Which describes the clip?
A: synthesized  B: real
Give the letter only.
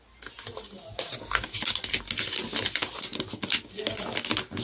B